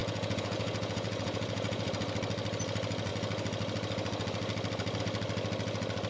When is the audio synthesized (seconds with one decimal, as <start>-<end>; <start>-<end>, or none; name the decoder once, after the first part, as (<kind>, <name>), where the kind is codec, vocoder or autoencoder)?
0.0-1.9 (vocoder, Vocos)